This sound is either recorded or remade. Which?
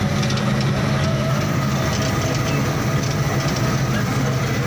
recorded